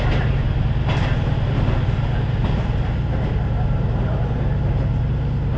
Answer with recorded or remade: recorded